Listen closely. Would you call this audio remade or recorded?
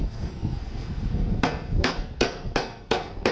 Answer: remade